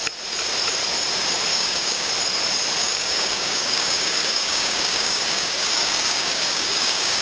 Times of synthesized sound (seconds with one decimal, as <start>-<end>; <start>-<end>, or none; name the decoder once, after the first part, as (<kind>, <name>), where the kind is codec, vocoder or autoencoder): 1.5-2.1 (codec, DAC); 2.8-7.2